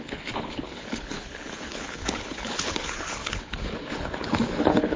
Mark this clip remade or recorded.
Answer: remade